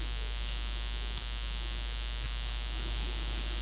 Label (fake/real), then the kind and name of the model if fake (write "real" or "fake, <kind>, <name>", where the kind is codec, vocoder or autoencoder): real